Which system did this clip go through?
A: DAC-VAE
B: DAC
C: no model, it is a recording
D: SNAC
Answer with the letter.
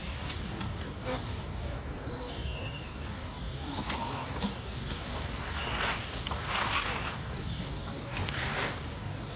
B